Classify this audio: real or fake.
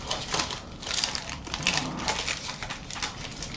fake